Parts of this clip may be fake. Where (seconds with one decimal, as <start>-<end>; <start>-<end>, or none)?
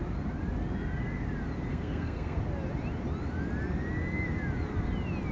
1.7-2.4